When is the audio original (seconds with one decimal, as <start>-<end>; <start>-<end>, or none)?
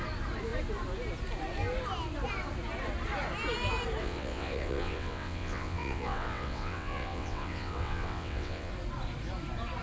0.0-4.0; 8.7-9.8